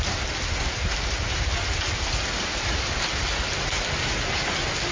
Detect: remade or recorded recorded